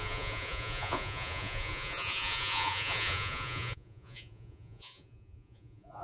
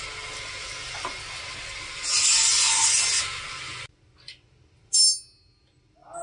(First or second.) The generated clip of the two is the first